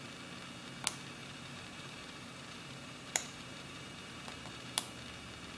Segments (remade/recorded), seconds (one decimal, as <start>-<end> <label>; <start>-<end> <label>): 0.0-1.2 recorded; 1.2-4.6 remade; 4.6-5.6 recorded